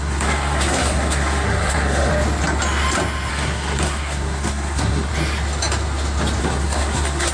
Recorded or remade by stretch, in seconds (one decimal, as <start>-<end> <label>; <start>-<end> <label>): 0.0-2.1 remade; 2.1-3.3 recorded; 3.3-5.1 remade; 5.1-6.4 recorded; 6.4-7.3 remade